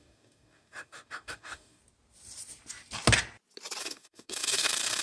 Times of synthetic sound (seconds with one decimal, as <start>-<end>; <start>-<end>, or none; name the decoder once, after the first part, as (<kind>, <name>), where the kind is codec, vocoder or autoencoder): 0.0-1.8 (codec, DAC); 3.8-5.0